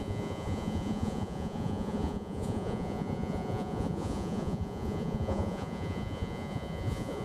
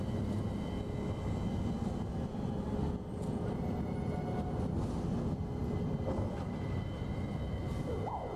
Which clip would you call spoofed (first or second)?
first